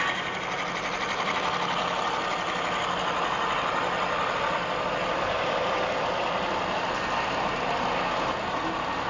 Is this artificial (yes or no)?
no